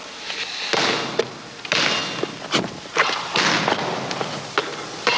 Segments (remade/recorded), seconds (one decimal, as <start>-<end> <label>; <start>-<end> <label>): 0.0-5.2 recorded